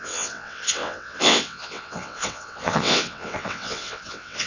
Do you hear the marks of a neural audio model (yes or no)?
yes